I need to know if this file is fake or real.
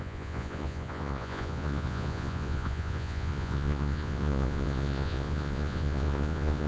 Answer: fake